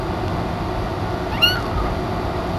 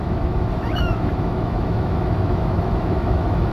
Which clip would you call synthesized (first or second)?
second